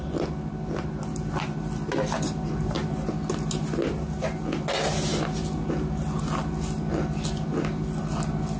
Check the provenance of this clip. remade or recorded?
recorded